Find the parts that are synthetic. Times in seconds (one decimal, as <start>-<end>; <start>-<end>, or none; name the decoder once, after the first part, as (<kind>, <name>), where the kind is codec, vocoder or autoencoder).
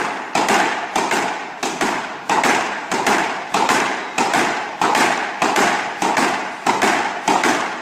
1.4-6.1 (vocoder, BigVGAN v2)